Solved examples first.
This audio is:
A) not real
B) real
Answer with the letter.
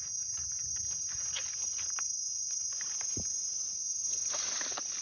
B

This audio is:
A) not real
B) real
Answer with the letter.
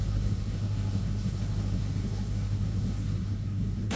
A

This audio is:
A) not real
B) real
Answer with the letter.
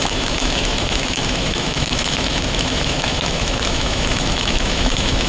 A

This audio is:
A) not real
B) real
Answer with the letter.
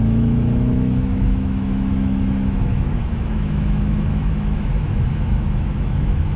A